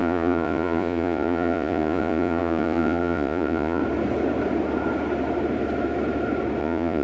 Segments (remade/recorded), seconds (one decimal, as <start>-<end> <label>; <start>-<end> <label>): 0.0-3.8 remade; 3.8-6.6 recorded; 6.6-7.0 remade